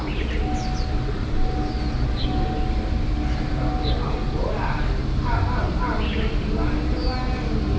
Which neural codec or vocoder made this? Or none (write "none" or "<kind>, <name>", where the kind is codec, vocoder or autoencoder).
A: none